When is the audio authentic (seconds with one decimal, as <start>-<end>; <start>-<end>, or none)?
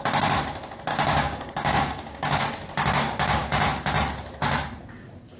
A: 0.0-0.9; 2.4-5.4